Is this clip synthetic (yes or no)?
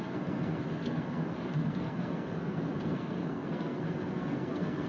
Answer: yes